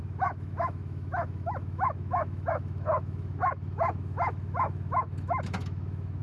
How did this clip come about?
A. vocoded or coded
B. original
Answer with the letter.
A